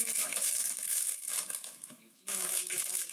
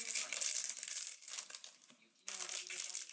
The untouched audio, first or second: second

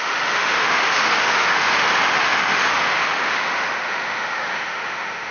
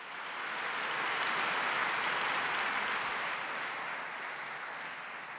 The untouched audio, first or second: second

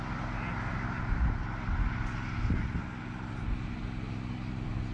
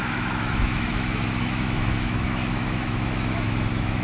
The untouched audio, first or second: first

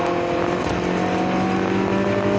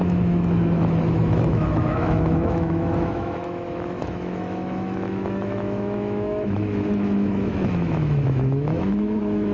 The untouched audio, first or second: first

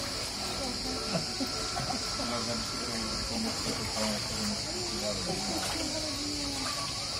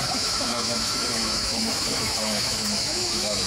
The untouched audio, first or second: first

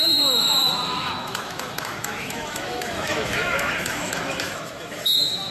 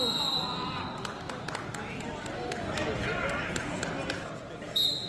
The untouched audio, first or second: second